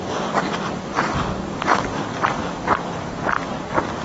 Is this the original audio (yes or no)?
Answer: yes